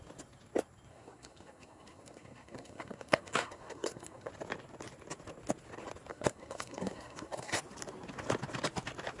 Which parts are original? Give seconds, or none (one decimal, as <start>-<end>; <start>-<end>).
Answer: 0.0-0.9; 4.3-6.1; 7.6-9.2